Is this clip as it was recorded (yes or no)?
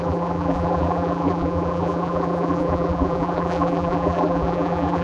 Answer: no